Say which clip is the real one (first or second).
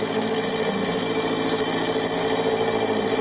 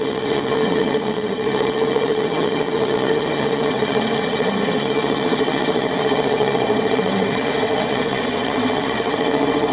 first